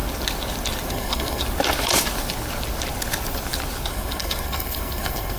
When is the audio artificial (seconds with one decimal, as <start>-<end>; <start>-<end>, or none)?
0.9-1.4; 3.9-5.4